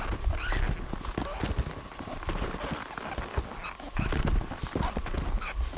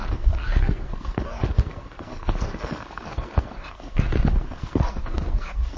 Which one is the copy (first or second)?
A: second